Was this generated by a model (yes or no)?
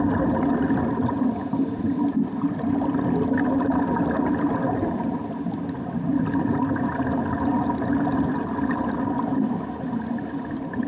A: no